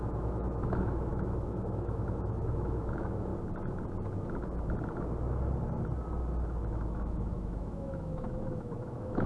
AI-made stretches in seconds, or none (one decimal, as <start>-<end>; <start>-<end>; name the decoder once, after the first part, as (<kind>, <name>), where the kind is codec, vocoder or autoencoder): 0.0-3.3 (autoencoder, DAC-VAE); 6.7-9.3